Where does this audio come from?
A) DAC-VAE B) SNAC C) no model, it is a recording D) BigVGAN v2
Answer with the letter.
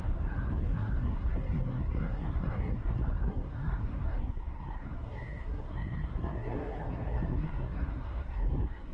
B